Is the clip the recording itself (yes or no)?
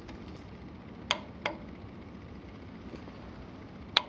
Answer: yes